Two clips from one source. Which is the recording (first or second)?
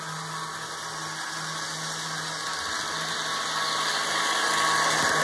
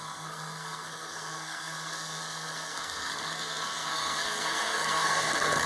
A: first